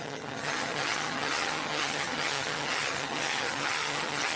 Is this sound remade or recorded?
remade